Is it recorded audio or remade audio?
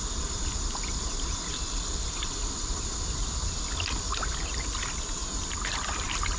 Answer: recorded